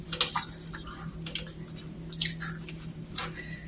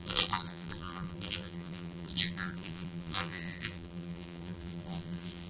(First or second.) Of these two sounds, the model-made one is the second